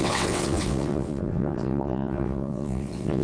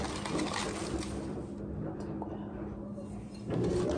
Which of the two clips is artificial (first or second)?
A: first